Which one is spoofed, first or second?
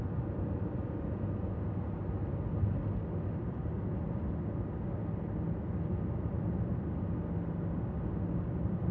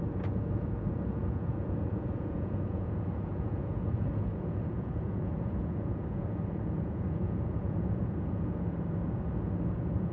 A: second